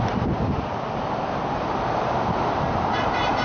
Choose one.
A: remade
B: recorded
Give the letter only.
A